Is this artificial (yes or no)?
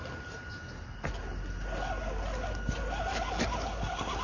no